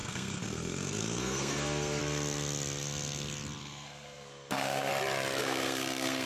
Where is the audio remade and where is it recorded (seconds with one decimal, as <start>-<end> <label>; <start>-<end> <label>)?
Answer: 0.0-2.0 remade; 2.0-3.6 recorded; 3.6-4.9 remade; 4.9-5.4 recorded; 5.4-6.3 remade